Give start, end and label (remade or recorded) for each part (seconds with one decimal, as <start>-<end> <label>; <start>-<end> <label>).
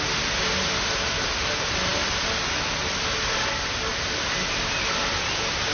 0.0-5.7 recorded